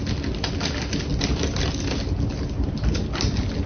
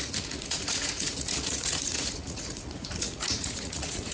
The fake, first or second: second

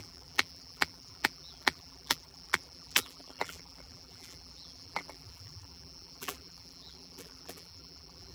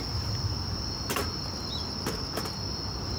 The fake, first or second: first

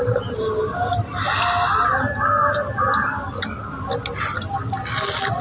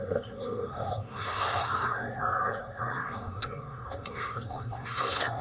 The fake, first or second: second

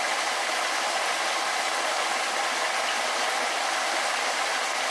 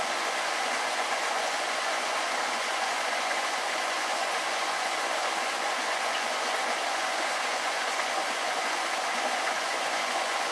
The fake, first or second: second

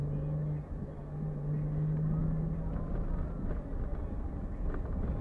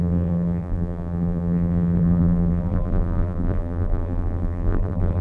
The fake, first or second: second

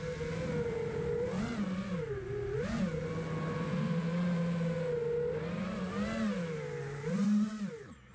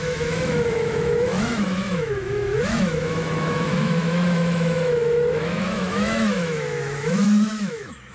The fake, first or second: second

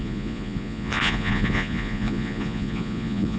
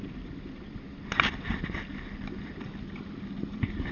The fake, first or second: first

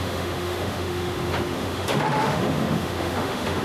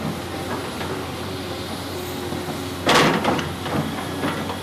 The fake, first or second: first